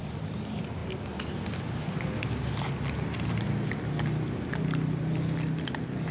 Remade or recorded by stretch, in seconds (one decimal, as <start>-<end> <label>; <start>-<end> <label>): 0.0-6.1 recorded